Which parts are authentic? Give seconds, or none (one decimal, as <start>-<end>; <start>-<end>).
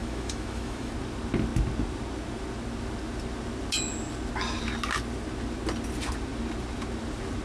0.9-7.4